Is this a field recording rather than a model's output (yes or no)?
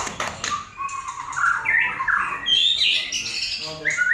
yes